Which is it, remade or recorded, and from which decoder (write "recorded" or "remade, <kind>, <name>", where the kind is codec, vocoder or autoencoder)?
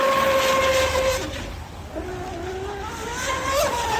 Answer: recorded